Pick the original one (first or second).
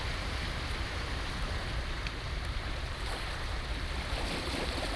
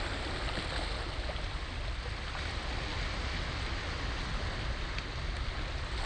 second